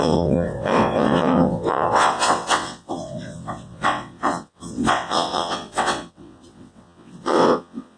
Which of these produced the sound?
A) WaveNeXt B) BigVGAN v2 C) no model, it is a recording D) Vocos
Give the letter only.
A